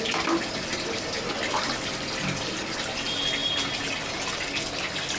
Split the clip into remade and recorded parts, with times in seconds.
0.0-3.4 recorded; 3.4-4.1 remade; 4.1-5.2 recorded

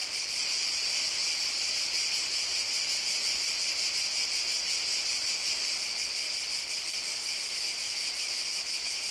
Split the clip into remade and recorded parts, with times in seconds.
0.0-7.1 recorded; 7.1-9.1 remade

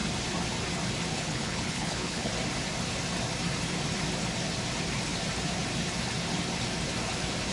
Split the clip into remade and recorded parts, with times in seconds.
0.0-1.1 recorded; 1.1-2.3 remade; 2.3-7.5 recorded

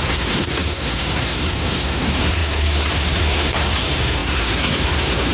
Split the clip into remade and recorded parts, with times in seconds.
0.0-5.3 remade

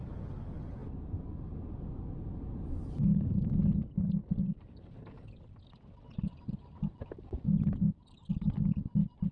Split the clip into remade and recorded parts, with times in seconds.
0.0-9.3 recorded

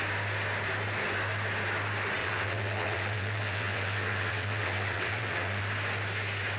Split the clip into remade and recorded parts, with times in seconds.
0.0-2.2 recorded; 2.2-5.6 remade; 5.6-6.6 recorded

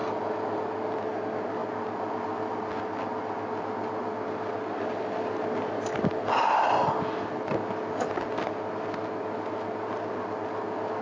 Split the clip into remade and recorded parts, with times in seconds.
0.0-11.0 recorded

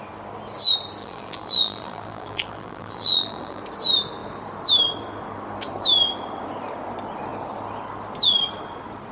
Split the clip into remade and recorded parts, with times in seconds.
0.0-1.0 recorded; 1.0-3.6 remade; 3.6-9.1 recorded